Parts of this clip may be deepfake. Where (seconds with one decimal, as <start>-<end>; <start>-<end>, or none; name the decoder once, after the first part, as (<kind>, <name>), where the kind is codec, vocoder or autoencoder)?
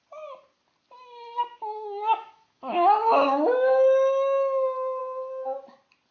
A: 1.5-5.0 (autoencoder, DAC-VAE)